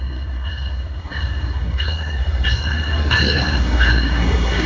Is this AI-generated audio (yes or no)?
yes